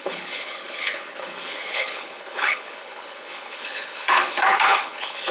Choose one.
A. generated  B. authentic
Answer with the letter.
A